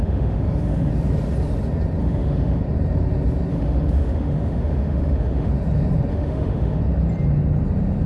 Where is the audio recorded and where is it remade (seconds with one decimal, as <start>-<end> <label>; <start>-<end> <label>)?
0.0-0.9 remade; 0.9-2.0 recorded; 2.0-2.6 remade; 2.6-3.5 recorded; 3.5-5.5 remade; 5.5-6.1 recorded; 6.1-6.8 remade; 6.8-8.1 recorded